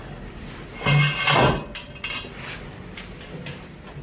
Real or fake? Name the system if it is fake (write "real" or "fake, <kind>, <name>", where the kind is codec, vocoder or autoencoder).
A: real